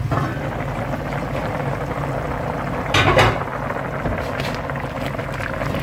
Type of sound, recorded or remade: recorded